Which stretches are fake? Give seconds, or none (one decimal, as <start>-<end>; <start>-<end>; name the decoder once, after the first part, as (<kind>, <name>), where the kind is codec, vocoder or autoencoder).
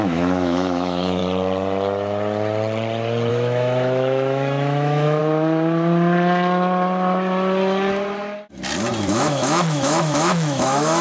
0.0-1.2 (autoencoder, DAC-VAE); 3.3-5.2; 9.1-11.0